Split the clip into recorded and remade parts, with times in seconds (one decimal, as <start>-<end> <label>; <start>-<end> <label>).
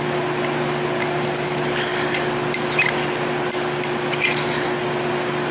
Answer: 0.0-5.5 recorded